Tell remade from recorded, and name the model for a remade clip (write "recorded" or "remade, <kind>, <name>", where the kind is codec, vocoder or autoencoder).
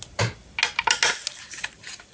recorded